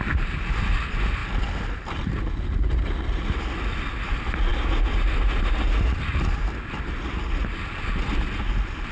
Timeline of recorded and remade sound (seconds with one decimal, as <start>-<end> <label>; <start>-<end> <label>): 0.0-8.9 recorded